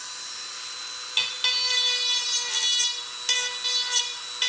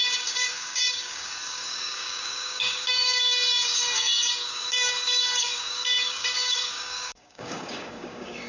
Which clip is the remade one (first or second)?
second